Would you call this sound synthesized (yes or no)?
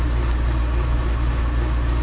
no